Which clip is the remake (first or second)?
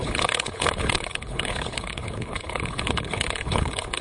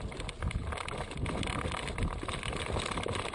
first